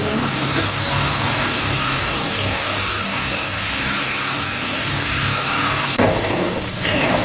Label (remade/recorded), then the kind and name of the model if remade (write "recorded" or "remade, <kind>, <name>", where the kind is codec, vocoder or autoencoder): remade, codec, DAC